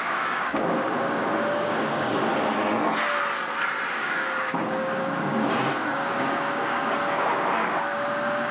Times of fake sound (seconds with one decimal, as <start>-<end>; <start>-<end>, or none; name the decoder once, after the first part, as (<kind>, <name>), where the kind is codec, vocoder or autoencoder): 0.0-2.3 (codec, DAC); 3.9-8.5